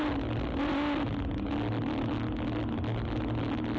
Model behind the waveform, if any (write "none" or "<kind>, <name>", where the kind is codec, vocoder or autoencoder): none